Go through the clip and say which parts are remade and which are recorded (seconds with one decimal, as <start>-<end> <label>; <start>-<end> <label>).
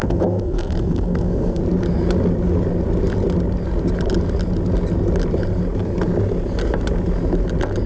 0.0-1.6 remade; 1.6-7.9 recorded